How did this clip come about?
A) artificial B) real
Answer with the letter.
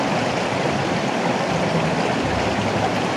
B